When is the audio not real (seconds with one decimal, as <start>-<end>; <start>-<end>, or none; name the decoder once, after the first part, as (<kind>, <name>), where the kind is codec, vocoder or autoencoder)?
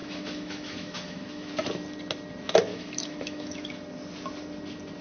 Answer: 0.0-1.5 (autoencoder, DAC-VAE); 2.7-3.7